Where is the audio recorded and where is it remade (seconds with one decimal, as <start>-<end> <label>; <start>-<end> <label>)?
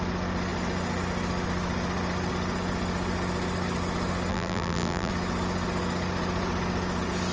0.0-4.3 recorded; 4.3-5.1 remade; 5.1-7.3 recorded